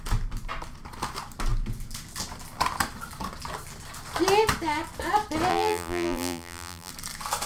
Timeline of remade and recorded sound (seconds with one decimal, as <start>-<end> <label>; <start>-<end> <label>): 0.0-5.5 recorded; 5.5-6.9 remade; 6.9-7.5 recorded